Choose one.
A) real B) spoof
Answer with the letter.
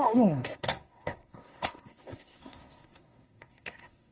B